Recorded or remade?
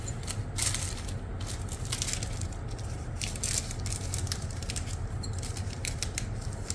recorded